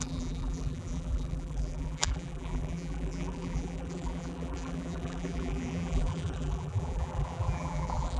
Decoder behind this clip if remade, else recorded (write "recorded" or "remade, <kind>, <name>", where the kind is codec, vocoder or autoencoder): remade, vocoder, BigVGAN v2